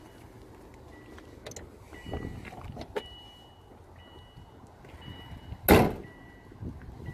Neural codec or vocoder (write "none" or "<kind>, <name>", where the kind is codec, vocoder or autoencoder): none